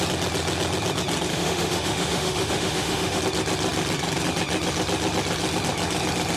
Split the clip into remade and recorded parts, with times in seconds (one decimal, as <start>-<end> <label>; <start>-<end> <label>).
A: 0.0-1.3 recorded; 1.3-3.2 remade; 3.2-6.4 recorded